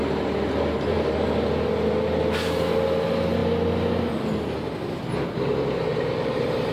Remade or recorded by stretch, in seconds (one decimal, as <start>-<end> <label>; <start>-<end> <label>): 0.0-5.9 recorded; 5.9-6.7 remade